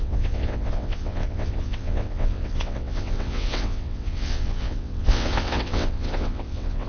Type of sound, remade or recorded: remade